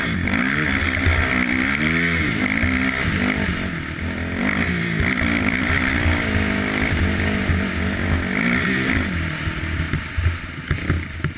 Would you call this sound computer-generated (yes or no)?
no